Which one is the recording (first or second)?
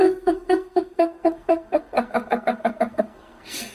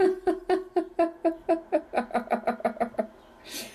second